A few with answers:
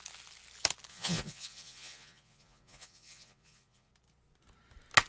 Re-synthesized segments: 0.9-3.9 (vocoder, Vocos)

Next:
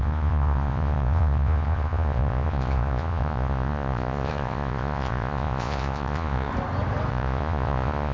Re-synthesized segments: 0.0-6.5 (vocoder, Vocos); 7.1-8.1